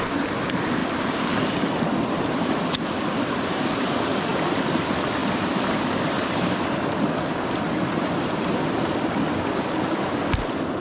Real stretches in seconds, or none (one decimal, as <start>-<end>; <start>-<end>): 0.0-0.8; 3.9-4.3; 4.8-5.2; 8.3-10.8